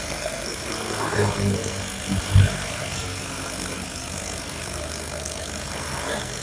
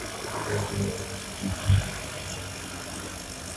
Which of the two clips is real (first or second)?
second